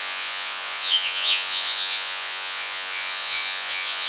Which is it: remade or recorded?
remade